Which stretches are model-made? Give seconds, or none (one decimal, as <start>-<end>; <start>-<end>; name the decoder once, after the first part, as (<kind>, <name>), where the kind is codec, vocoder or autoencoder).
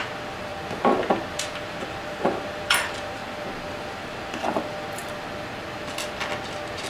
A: 0.0-0.5 (vocoder, BigVGAN v2); 1.3-3.2; 3.7-5.0